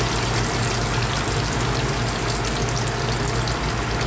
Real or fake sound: real